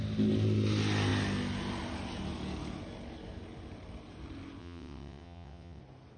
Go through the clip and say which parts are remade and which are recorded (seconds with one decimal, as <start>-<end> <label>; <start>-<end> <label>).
0.0-4.6 recorded; 4.6-5.8 remade; 5.8-6.2 recorded